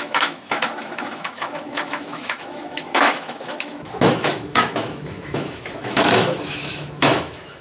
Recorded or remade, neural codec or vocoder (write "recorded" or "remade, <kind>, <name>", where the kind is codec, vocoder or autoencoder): remade, autoencoder, DAC-VAE